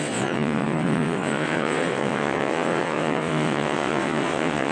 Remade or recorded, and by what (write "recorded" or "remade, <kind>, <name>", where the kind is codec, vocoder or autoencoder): remade, vocoder, WaveNeXt